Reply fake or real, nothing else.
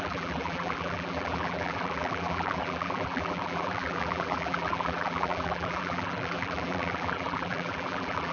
fake